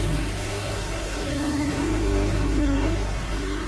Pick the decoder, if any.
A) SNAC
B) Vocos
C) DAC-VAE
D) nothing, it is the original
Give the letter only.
A